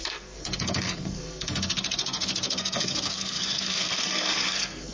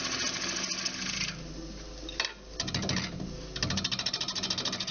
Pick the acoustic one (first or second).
second